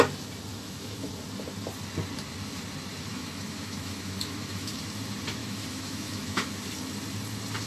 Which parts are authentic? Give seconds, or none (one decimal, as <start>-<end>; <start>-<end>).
0.0-0.5; 1.1-3.1; 4.8-5.4; 6.5-7.7